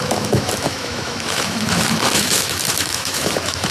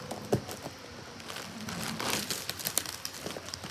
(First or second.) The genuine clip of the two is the second